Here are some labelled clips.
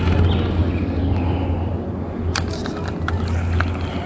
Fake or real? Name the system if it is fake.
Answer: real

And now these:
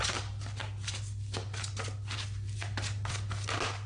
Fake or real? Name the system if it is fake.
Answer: real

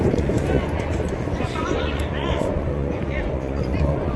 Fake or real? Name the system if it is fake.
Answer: fake, vocoder, Vocos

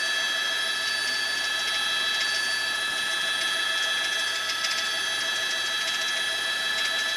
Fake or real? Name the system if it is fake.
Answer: real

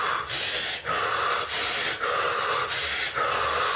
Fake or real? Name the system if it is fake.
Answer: real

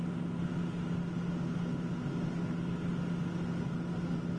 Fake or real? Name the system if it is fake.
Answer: real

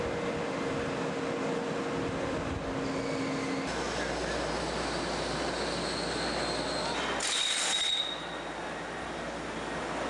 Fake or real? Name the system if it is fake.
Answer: real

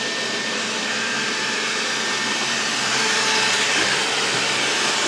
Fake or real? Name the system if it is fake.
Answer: fake, vocoder, BigVGAN v2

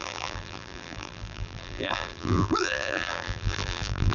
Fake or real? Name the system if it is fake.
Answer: fake, vocoder, BigVGAN v2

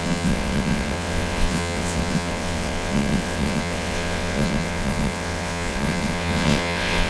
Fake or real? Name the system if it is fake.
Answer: fake, vocoder, WaveNeXt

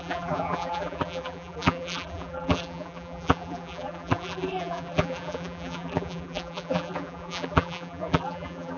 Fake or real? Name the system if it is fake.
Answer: fake, vocoder, BigVGAN v2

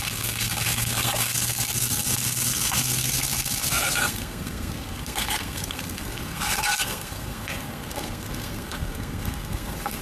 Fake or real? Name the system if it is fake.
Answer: fake, codec, SNAC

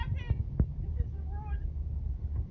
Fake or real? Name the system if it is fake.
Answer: real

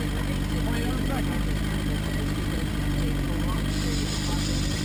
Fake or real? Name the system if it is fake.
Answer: real